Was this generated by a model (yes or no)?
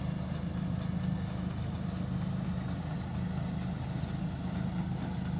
no